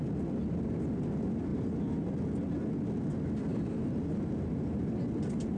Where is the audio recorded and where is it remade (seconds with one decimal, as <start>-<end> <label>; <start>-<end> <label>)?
0.0-1.5 recorded; 1.5-2.1 remade; 2.1-3.5 recorded; 3.5-5.0 remade; 5.0-5.6 recorded